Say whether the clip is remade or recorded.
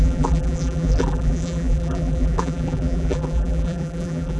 remade